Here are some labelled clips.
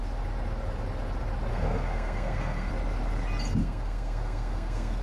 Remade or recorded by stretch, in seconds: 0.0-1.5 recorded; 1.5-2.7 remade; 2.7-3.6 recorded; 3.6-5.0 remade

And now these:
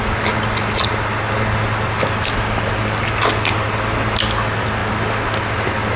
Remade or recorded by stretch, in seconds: 0.0-6.0 recorded

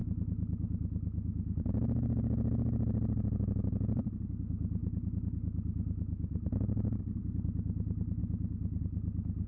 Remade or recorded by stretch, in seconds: 0.0-1.6 remade; 1.6-4.8 recorded; 4.8-7.0 remade; 7.0-9.5 recorded